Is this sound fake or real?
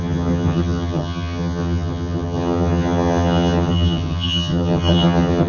fake